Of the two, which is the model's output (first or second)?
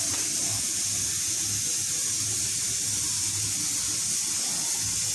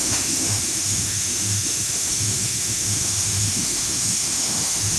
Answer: second